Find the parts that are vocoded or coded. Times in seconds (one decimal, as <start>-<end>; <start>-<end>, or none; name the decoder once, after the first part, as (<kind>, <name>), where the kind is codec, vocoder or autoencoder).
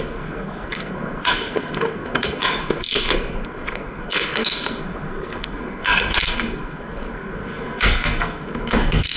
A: 0.0-9.2 (codec, SNAC)